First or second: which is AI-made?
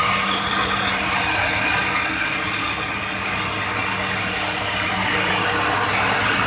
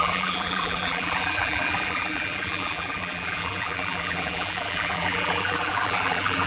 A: second